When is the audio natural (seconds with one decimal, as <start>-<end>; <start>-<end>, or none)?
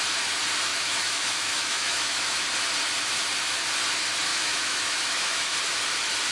0.0-0.7; 2.4-4.3; 5.5-6.3